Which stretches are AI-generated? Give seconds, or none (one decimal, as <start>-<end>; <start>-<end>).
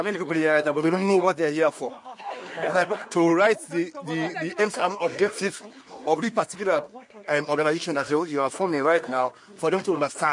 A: 0.0-3.3; 4.6-10.3